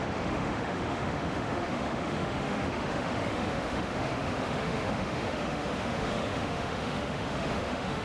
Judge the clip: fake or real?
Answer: fake